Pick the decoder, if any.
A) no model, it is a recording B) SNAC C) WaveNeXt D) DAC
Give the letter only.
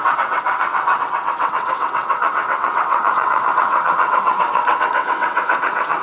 C